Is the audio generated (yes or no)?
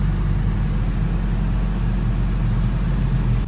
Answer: no